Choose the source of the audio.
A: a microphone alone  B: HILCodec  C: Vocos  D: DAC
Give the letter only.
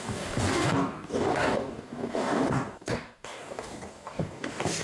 D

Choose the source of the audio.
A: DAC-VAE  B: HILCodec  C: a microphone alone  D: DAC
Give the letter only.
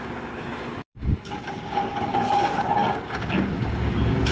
D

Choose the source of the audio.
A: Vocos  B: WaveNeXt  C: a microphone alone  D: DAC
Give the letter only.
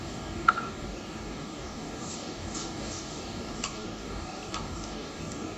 D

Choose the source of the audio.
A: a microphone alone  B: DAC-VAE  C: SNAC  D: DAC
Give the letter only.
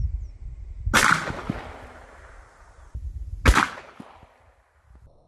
A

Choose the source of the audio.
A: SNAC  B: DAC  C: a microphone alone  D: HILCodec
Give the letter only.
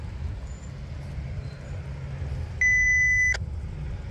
C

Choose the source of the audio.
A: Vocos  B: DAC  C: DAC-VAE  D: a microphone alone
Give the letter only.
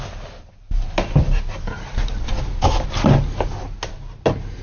D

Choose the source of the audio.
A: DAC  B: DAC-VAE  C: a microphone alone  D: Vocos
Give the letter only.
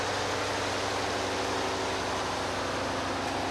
C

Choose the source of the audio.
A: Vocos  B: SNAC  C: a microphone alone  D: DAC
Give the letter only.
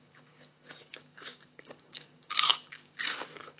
D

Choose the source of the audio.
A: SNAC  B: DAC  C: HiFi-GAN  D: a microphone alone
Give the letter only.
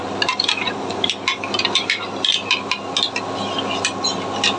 D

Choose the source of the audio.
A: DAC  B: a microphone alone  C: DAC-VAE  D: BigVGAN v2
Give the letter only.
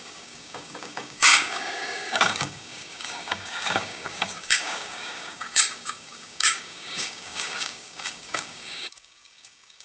A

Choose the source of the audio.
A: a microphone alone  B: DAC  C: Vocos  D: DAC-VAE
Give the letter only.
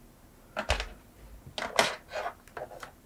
A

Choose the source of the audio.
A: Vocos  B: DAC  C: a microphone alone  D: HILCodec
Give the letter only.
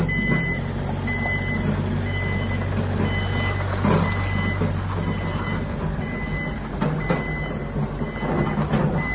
C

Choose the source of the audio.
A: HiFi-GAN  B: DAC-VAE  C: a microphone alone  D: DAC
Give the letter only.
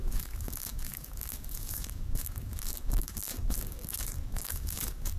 D